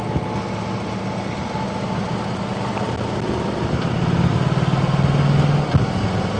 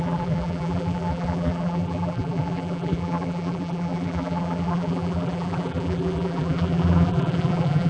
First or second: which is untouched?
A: first